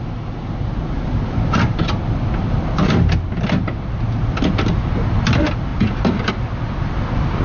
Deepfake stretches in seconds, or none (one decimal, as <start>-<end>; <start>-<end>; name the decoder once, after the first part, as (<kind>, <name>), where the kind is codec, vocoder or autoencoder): none